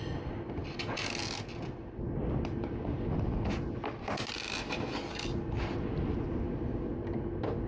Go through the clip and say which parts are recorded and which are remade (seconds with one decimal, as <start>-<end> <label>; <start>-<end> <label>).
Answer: 0.0-7.7 recorded